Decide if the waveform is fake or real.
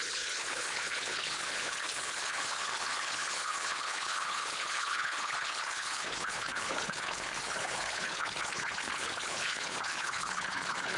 fake